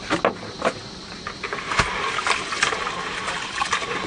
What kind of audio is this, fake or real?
real